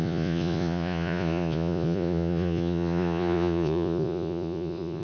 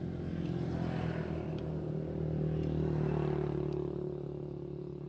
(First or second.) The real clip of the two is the second